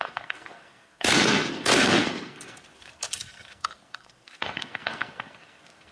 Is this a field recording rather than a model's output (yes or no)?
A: no